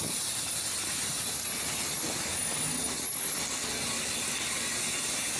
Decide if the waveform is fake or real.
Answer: real